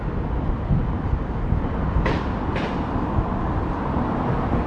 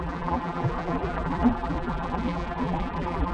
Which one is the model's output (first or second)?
second